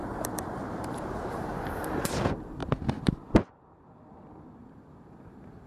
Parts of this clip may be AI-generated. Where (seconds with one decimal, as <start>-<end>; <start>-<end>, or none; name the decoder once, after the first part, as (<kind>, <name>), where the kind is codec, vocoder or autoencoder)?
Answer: 0.6-1.5 (vocoder, BigVGAN v2); 2.0-2.6; 5.0-5.7